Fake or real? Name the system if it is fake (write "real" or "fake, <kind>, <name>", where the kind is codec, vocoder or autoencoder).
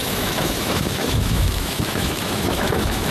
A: fake, autoencoder, DAC-VAE